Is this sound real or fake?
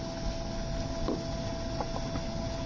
real